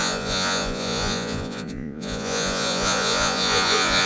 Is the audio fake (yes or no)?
yes